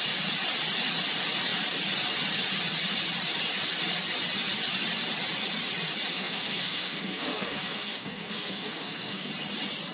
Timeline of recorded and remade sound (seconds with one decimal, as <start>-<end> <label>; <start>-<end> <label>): 0.0-6.1 recorded; 6.1-9.3 remade; 9.3-9.9 recorded